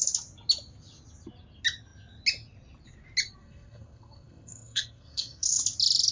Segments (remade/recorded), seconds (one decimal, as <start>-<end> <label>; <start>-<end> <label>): 0.0-3.4 recorded; 3.4-5.6 remade; 5.6-6.1 recorded